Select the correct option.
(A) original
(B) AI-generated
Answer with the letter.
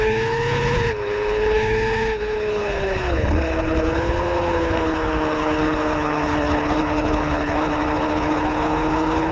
B